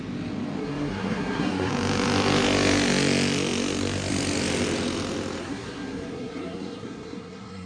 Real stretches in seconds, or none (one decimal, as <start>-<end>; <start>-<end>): 0.0-0.6; 1.7-5.4